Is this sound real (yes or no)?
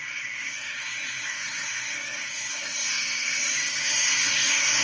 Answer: no